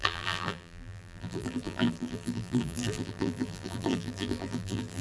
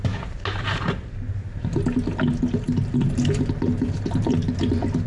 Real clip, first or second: second